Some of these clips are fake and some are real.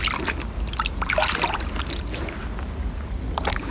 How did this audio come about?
real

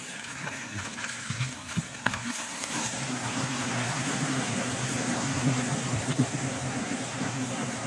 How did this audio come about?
fake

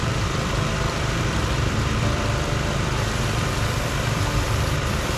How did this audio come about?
fake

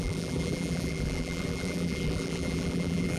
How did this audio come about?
fake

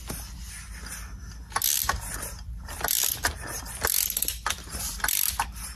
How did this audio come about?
real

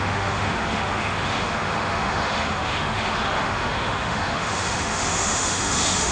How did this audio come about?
fake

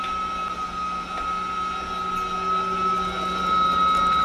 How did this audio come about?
real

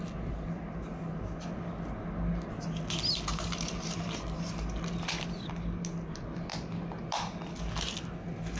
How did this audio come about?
real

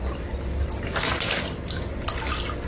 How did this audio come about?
real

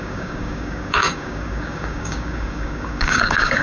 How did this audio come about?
fake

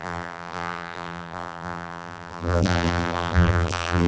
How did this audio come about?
fake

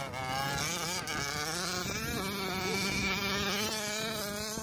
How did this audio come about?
real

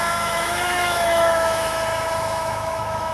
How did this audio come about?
fake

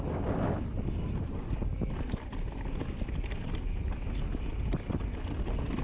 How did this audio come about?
real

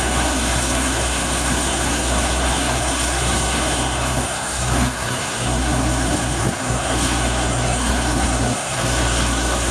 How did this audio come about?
fake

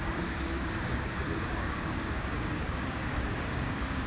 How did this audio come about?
fake